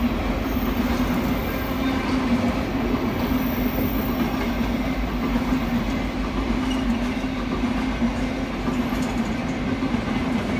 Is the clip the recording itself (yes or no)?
yes